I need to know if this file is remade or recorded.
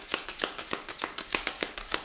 remade